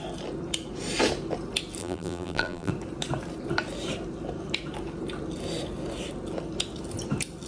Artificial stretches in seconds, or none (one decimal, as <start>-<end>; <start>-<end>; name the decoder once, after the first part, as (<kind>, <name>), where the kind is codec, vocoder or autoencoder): 1.8-2.7 (vocoder, BigVGAN v2)